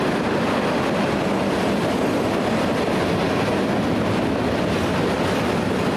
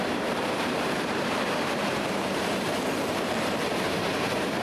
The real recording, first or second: first